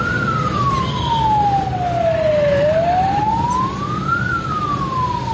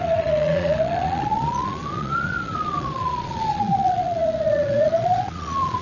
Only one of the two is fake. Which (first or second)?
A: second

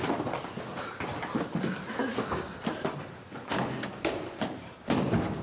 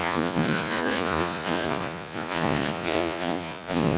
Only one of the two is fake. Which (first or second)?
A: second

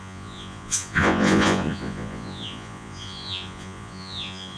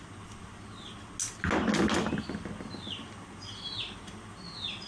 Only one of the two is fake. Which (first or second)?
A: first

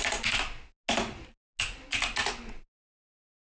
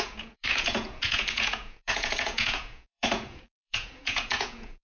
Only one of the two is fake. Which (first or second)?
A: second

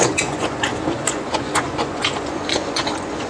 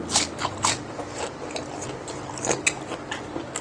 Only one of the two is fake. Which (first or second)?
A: first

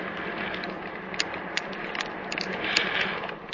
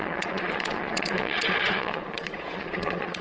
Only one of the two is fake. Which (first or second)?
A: second